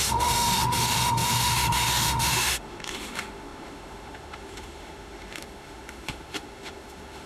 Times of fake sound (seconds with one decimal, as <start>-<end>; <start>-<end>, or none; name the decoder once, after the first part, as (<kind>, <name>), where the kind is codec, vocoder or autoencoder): 0.0-7.3 (autoencoder, DAC-VAE)